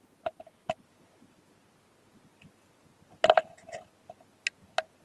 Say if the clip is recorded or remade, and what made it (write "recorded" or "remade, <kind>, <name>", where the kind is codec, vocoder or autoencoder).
recorded